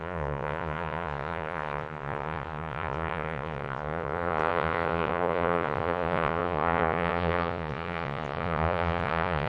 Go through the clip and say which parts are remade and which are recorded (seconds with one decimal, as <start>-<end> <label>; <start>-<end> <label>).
0.0-9.5 remade